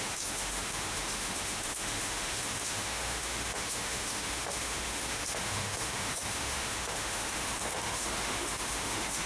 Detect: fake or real fake